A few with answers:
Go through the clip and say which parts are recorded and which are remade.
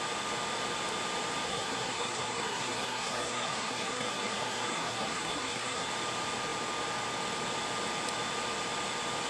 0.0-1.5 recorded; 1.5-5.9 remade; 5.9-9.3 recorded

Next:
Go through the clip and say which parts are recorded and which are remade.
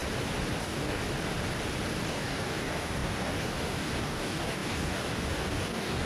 0.0-0.6 recorded; 0.6-1.0 remade; 1.0-2.1 recorded; 2.1-6.1 remade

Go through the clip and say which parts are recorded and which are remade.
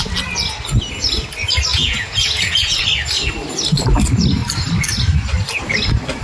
0.0-1.7 recorded; 1.7-2.8 remade; 2.8-6.2 recorded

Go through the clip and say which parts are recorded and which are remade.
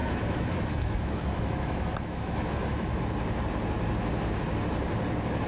0.0-3.0 remade; 3.0-5.5 recorded